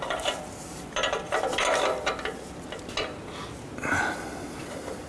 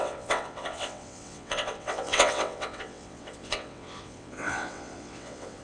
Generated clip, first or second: second